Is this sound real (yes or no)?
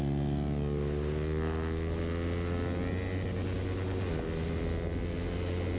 yes